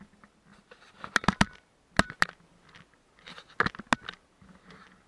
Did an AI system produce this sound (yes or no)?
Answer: no